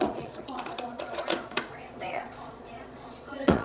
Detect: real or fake fake